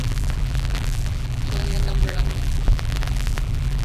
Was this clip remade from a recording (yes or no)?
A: yes